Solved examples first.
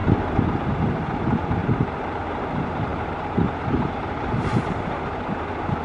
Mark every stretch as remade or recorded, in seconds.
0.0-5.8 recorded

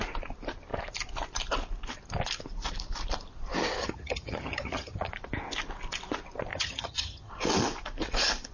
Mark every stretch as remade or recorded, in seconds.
0.0-3.8 recorded; 3.8-5.1 remade; 5.1-6.5 recorded; 6.5-7.3 remade; 7.3-8.5 recorded